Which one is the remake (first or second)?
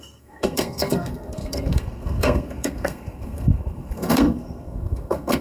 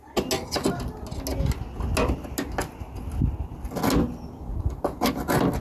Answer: first